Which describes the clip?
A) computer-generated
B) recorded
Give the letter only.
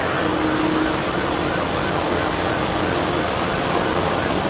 B